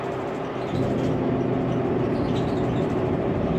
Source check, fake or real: real